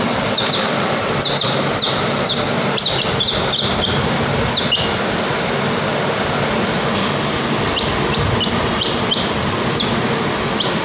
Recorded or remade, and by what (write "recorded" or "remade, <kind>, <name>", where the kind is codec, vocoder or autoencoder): recorded